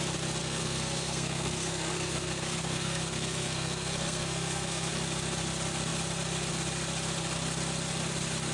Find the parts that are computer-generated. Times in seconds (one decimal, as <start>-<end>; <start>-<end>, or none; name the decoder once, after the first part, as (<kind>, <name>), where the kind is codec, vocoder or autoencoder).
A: 0.4-4.9 (codec, SNAC)